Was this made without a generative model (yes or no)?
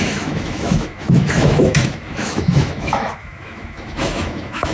no